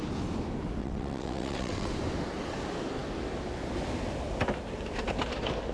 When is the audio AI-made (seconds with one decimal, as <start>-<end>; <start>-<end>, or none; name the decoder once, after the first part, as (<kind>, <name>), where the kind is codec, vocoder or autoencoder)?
0.8-1.9 (vocoder, WaveNeXt)